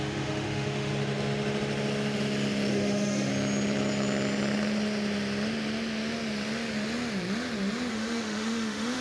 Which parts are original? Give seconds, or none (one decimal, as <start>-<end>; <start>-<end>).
0.9-2.7; 3.3-7.9